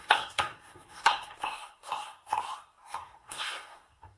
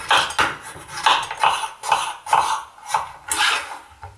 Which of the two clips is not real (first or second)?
first